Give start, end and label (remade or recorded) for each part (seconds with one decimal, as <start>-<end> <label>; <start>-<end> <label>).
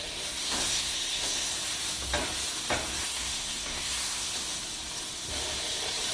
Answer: 0.0-0.4 recorded; 0.4-1.5 remade; 1.5-3.0 recorded; 3.0-4.3 remade; 4.3-6.1 recorded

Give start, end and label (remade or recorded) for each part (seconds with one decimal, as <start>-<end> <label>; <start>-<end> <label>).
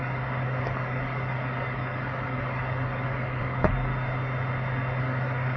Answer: 0.0-3.9 remade; 3.9-5.0 recorded; 5.0-5.6 remade